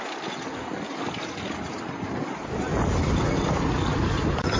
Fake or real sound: real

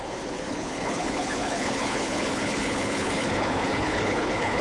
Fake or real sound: fake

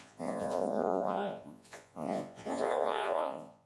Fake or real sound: fake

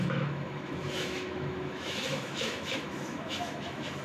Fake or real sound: fake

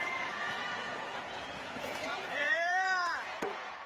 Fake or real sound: fake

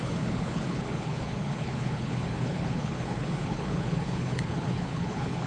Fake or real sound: fake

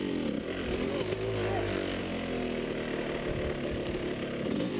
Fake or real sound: real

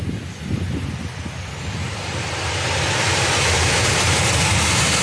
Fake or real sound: real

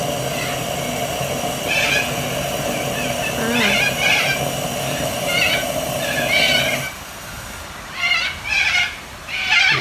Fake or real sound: real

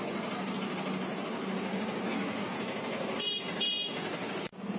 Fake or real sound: real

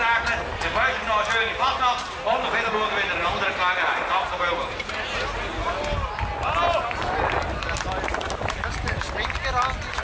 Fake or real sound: real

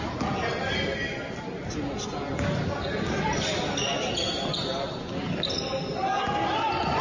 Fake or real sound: real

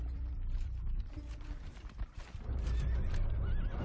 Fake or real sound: fake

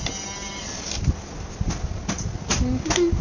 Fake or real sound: real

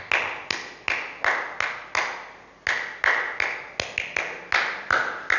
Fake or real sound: real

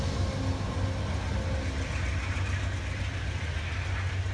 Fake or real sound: real